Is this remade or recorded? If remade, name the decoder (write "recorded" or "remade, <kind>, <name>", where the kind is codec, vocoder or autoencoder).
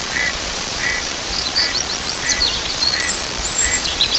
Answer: remade, vocoder, Vocos